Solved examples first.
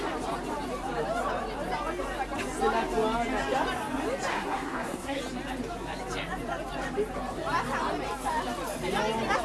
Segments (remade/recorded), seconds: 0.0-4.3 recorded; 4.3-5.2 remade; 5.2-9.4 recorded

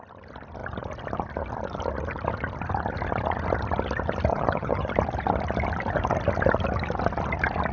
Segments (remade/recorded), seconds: 0.0-4.3 recorded; 4.3-4.9 remade; 4.9-7.7 recorded

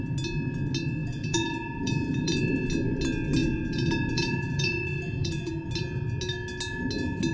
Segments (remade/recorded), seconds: 0.0-1.0 recorded; 1.0-2.4 remade; 2.4-3.4 recorded; 3.4-5.5 remade; 5.5-7.3 recorded

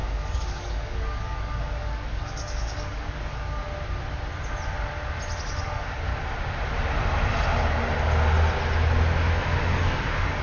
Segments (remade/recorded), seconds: 0.0-3.6 remade; 3.6-5.6 recorded; 5.6-6.1 remade; 6.1-9.6 recorded; 9.6-10.4 remade

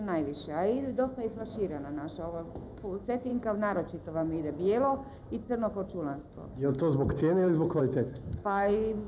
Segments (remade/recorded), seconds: 0.0-3.3 remade; 3.3-7.8 recorded; 7.8-9.1 remade

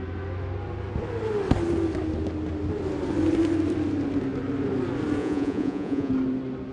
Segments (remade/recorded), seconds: 0.0-5.2 recorded; 5.2-6.1 remade; 6.1-6.7 recorded